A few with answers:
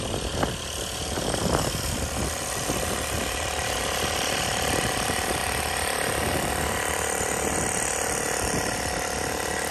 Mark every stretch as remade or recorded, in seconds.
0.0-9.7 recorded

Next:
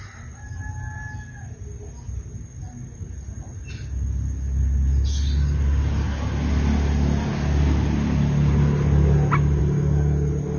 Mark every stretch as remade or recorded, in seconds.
0.0-10.6 recorded

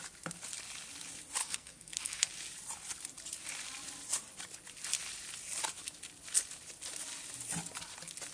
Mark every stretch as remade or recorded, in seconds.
0.0-1.4 recorded; 1.4-2.3 remade; 2.3-8.3 recorded

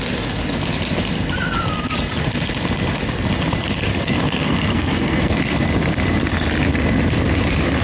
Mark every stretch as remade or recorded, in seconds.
0.0-3.9 recorded; 3.9-5.4 remade; 5.4-7.8 recorded

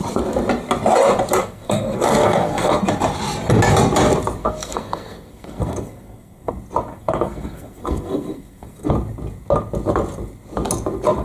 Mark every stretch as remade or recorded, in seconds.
0.0-1.4 recorded; 1.4-2.8 remade; 2.8-4.4 recorded; 4.4-6.5 remade; 6.5-6.9 recorded; 6.9-8.9 remade; 8.9-11.2 recorded

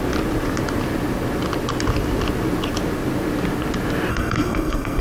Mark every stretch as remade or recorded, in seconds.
0.0-4.1 recorded; 4.1-5.0 remade